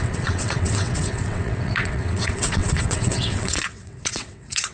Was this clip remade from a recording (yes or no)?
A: yes